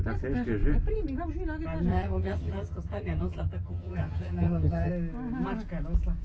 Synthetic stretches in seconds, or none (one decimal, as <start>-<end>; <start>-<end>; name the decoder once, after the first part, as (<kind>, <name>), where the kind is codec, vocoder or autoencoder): 1.9-4.9 (vocoder, HiFi-GAN)